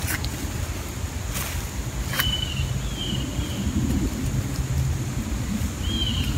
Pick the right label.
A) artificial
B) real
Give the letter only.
B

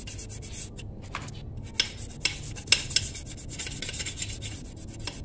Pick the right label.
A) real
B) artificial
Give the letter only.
A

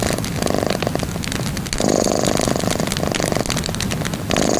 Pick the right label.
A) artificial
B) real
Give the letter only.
B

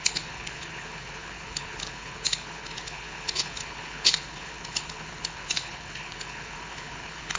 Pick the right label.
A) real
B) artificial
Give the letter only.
B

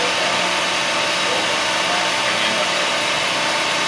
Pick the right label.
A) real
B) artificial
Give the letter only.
A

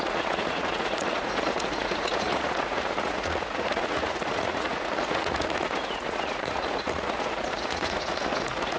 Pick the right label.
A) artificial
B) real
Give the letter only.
A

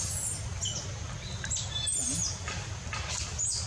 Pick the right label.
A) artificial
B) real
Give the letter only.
B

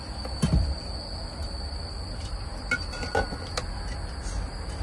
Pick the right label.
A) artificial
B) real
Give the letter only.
B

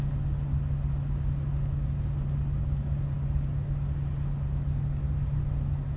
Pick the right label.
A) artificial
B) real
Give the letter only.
B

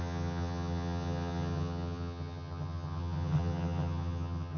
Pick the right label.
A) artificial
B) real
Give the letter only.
A